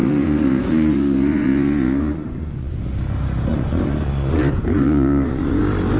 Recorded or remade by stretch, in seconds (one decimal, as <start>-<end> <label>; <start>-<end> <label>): 0.0-2.8 remade; 2.8-3.5 recorded; 3.5-5.6 remade; 5.6-6.0 recorded